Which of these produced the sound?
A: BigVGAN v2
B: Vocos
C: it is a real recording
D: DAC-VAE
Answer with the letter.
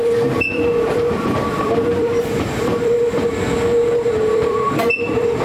A